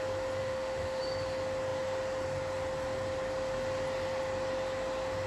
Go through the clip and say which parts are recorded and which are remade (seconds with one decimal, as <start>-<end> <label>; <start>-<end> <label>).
0.0-0.4 recorded; 0.4-1.0 remade; 1.0-5.3 recorded